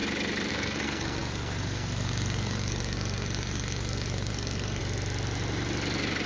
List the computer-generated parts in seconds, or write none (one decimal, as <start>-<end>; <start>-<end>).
0.5-4.8